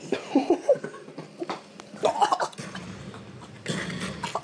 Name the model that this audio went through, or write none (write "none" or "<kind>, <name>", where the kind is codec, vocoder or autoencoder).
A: none